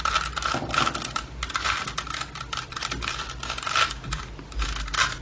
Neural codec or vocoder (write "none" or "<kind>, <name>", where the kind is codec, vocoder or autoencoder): none